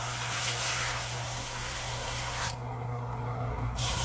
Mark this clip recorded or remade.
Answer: remade